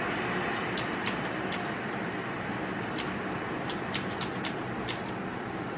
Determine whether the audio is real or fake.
real